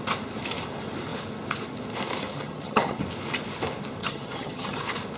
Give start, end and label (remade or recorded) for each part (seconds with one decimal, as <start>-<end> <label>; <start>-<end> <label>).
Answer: 0.0-2.3 recorded; 2.3-3.0 remade; 3.0-4.0 recorded; 4.0-4.8 remade; 4.8-5.2 recorded